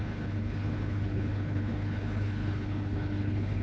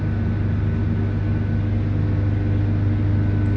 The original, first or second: second